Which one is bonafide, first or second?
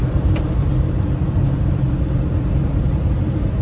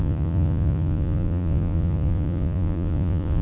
first